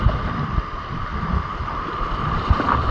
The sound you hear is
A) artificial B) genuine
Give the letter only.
B